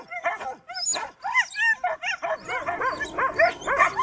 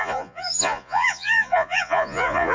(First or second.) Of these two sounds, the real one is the first